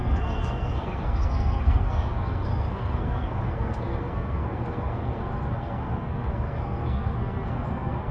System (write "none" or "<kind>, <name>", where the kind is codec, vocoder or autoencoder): codec, SNAC